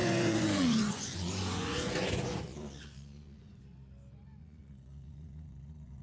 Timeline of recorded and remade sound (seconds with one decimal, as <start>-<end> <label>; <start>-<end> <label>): 0.0-3.6 remade; 3.6-4.4 recorded; 4.4-6.0 remade

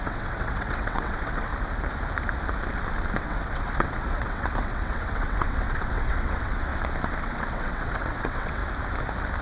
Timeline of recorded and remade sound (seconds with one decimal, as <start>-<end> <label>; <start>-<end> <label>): 0.0-1.5 remade; 1.5-3.2 recorded; 3.2-6.7 remade; 6.7-7.2 recorded; 7.2-8.6 remade; 8.6-9.4 recorded